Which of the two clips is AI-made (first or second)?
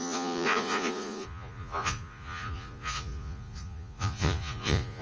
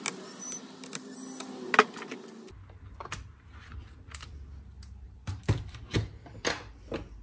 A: first